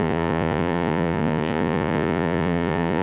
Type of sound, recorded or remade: remade